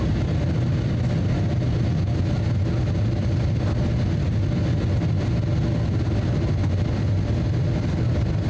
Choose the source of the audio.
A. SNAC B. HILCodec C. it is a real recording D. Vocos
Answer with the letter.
C